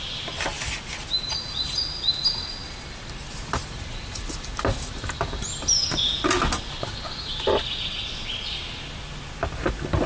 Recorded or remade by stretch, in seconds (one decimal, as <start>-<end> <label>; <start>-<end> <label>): 0.0-2.6 recorded; 2.6-3.1 remade; 3.1-10.1 recorded